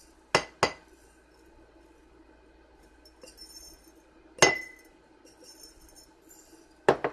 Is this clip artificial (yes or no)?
no